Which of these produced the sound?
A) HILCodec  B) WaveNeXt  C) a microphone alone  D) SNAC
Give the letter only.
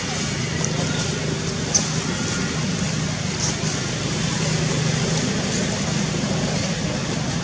C